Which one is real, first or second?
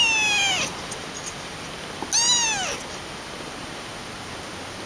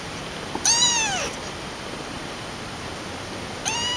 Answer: first